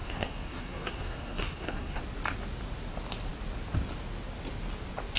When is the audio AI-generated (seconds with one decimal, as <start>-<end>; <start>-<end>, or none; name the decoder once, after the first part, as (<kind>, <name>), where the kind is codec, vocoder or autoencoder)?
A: 0.0-2.0 (codec, SNAC)